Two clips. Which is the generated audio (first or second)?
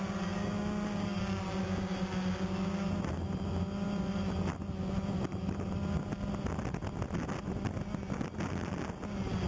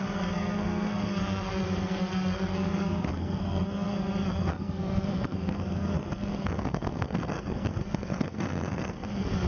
second